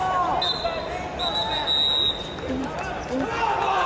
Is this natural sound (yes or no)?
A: yes